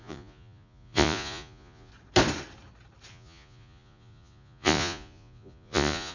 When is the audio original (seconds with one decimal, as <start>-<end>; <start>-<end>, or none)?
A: 1.9-3.1